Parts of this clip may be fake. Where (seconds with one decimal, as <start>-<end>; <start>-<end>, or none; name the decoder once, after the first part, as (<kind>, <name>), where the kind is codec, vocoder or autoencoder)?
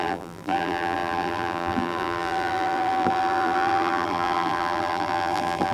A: 0.0-5.7 (vocoder, BigVGAN v2)